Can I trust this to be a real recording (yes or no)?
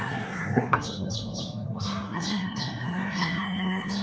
no